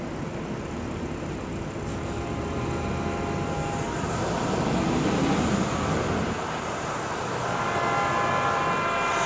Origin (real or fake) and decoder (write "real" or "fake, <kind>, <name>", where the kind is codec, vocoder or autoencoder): real